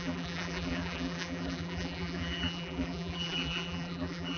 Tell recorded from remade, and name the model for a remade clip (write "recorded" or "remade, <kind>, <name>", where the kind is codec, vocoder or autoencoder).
remade, vocoder, BigVGAN v2